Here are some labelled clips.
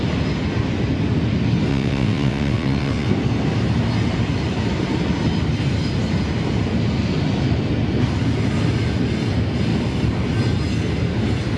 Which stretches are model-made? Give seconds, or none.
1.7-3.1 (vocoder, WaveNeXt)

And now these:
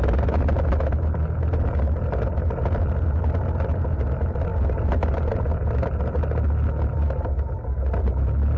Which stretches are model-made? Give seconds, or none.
none